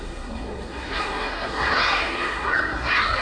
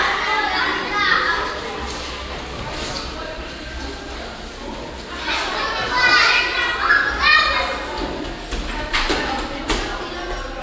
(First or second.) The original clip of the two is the second